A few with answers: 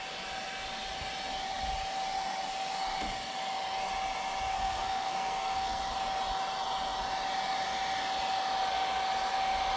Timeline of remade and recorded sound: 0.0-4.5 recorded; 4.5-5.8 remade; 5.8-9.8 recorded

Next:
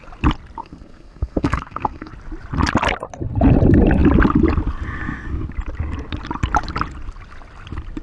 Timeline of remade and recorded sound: 0.0-0.6 recorded; 0.6-2.1 remade; 2.1-8.0 recorded

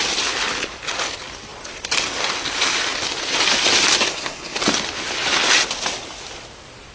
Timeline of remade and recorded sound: 0.0-4.1 recorded; 4.1-4.6 remade; 4.6-6.9 recorded

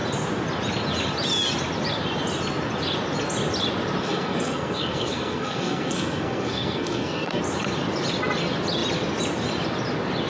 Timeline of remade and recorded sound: 0.0-4.0 recorded; 4.0-7.4 remade; 7.4-10.3 recorded

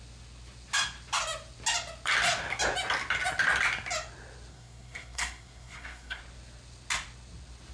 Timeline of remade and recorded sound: 0.0-4.5 recorded; 4.5-6.2 remade; 6.2-7.7 recorded

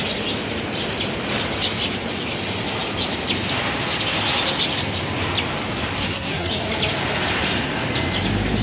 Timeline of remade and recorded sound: 0.0-6.0 recorded; 6.0-6.5 remade; 6.5-8.6 recorded

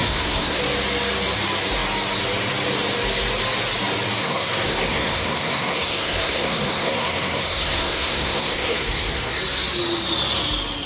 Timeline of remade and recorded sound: 0.0-0.6 remade; 0.6-4.2 recorded; 4.2-9.4 remade; 9.4-10.9 recorded

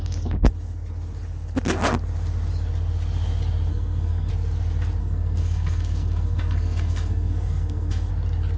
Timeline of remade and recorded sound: 0.0-3.7 recorded; 3.7-4.3 remade; 4.3-5.0 recorded; 5.0-8.1 remade; 8.1-8.6 recorded